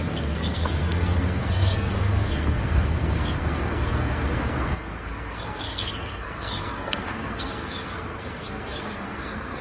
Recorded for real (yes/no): no